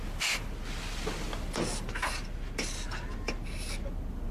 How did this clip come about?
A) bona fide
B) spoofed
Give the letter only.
A